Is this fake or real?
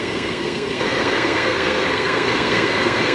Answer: fake